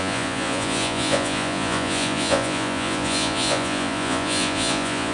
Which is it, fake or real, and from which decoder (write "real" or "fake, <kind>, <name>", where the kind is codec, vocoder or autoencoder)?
fake, vocoder, Vocos